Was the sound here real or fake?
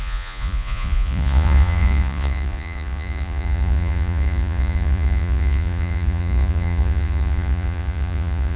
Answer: fake